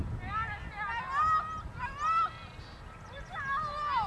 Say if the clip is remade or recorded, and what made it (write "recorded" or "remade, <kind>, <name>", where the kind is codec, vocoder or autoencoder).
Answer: recorded